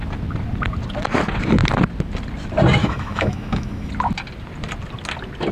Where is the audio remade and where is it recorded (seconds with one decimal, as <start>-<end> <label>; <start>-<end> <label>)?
0.0-2.8 recorded; 2.8-3.9 remade; 3.9-5.5 recorded